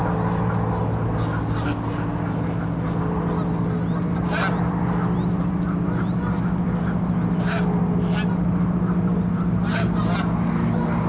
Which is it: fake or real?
real